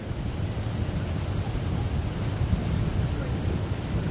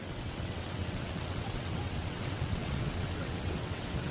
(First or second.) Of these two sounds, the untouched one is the first